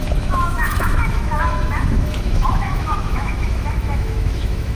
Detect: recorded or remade remade